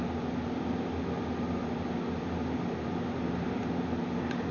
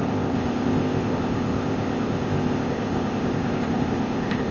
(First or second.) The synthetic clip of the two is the second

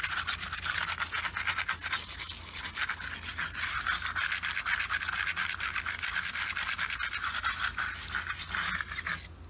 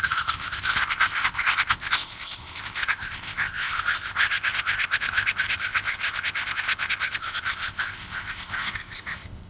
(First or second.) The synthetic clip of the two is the second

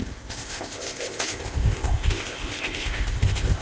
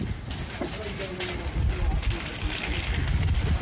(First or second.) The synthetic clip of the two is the first